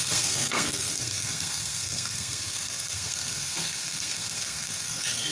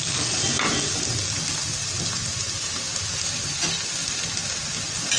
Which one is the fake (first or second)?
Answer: first